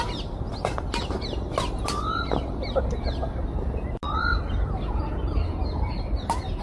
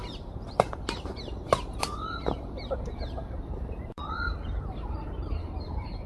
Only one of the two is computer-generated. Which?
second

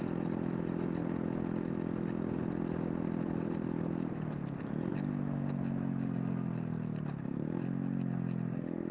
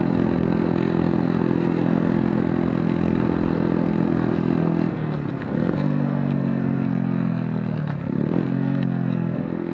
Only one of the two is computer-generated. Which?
second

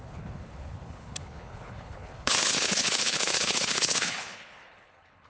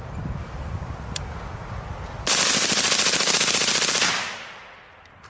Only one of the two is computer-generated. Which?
first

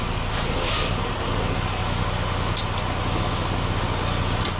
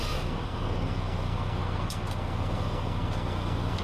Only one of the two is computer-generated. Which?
second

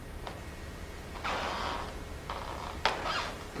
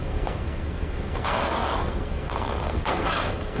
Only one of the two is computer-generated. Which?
second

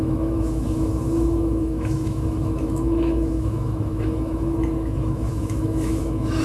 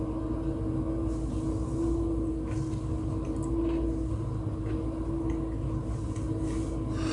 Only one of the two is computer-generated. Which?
first